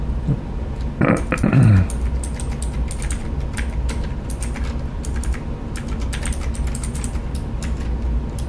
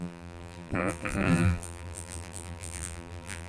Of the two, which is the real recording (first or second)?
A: first